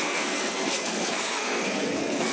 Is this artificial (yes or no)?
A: yes